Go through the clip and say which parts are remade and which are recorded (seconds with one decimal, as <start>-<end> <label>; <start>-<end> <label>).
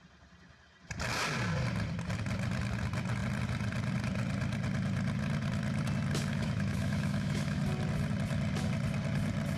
0.0-6.3 recorded; 6.3-7.6 remade; 7.6-9.6 recorded